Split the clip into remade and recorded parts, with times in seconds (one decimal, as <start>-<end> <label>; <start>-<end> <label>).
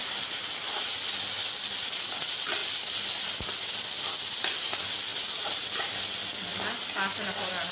0.0-7.7 recorded